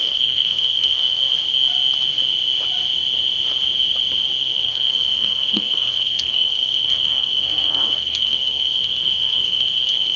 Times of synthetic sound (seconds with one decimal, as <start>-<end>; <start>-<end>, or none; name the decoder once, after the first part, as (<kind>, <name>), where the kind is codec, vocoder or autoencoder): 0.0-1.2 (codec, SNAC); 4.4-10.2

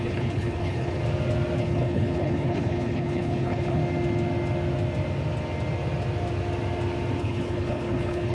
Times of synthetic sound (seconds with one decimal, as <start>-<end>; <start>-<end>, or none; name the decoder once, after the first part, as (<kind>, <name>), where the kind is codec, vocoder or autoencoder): 0.0-1.0 (codec, HILCodec); 1.6-3.8; 7.2-8.3

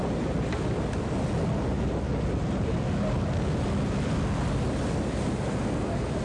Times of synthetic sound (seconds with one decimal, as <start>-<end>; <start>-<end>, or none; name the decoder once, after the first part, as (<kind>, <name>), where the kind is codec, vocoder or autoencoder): none

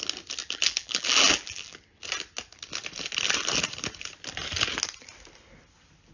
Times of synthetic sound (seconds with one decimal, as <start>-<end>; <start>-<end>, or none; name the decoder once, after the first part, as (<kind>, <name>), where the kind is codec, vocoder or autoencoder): 0.4-1.8 (vocoder, BigVGAN v2)

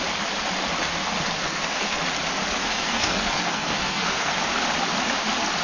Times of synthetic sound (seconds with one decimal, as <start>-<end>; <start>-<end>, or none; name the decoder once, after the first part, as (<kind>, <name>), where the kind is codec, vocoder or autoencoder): 1.4-2.0 (codec, SNAC); 2.6-4.4

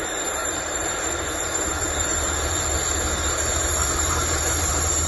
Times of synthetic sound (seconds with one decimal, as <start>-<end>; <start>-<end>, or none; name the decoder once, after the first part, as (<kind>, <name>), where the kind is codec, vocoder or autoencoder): 0.0-5.1 (vocoder, BigVGAN v2)

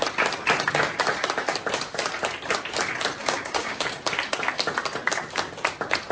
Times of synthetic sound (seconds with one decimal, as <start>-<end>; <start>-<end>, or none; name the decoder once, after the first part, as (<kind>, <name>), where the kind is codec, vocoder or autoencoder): 3.2-3.8 (codec, DAC)